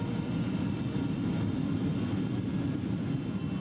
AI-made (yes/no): no